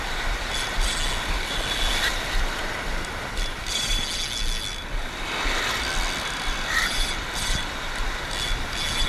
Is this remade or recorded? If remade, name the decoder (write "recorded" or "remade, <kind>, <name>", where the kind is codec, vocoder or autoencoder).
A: recorded